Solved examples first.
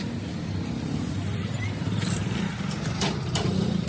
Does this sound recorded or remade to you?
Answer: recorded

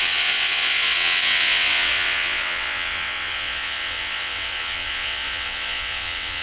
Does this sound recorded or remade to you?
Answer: remade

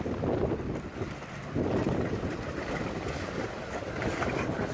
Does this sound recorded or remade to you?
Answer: recorded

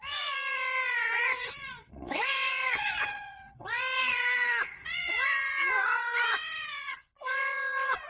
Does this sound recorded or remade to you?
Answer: remade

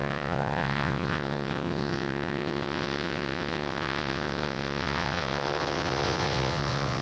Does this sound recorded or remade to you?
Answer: remade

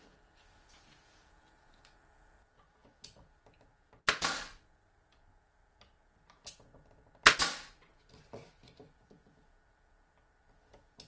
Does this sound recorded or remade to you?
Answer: recorded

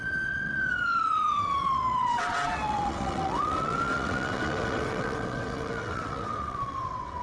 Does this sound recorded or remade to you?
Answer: remade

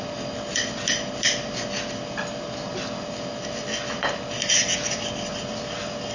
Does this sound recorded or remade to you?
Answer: recorded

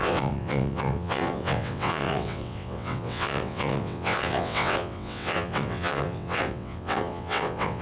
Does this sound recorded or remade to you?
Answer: remade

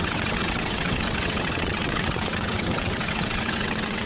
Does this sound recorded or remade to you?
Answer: remade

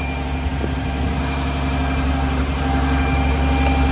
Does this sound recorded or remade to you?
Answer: recorded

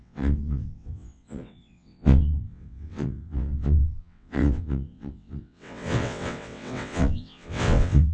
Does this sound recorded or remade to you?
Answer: remade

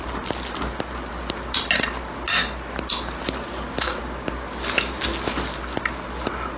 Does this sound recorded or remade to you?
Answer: recorded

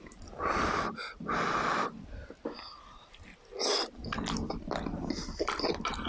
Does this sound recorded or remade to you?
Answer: recorded